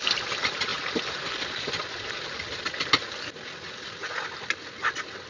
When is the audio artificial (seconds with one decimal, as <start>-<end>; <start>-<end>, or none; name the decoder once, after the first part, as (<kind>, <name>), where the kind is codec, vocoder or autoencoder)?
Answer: none